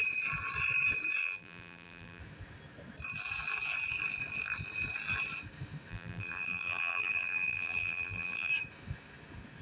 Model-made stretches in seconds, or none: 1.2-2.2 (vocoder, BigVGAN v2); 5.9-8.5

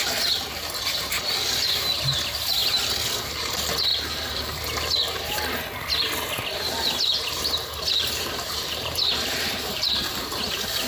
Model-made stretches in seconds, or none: 3.9-4.6 (vocoder, BigVGAN v2); 7.3-10.4